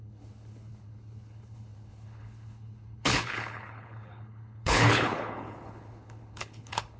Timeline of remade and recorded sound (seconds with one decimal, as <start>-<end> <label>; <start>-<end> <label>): 0.0-7.0 remade